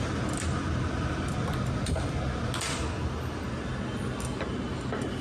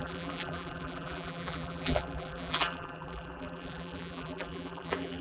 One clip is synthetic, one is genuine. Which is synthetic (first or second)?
second